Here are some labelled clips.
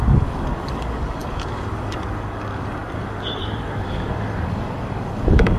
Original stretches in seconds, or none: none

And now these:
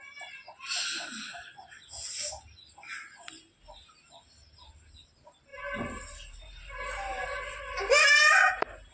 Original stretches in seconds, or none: 0.0-5.5; 8.5-8.9

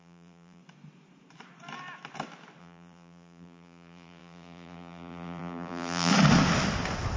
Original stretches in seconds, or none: 0.6-2.6; 6.1-7.2